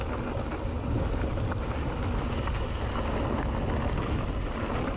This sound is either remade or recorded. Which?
recorded